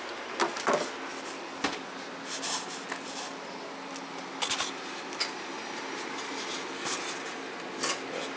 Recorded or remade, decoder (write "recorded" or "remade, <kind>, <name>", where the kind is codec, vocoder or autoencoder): recorded